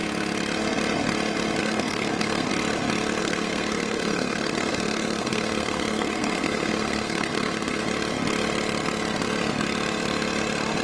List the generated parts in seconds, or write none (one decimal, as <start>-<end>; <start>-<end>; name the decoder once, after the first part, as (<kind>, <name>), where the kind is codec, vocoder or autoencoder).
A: 1.6-2.5 (codec, SNAC); 3.2-7.8